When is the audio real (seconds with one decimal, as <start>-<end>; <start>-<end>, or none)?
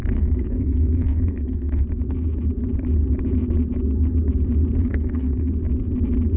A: 1.8-4.8; 5.5-6.4